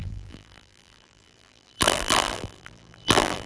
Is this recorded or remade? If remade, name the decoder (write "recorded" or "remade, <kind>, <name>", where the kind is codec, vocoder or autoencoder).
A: remade, vocoder, BigVGAN v2